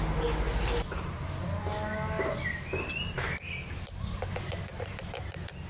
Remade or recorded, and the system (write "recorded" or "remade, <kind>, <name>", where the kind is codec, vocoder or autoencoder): recorded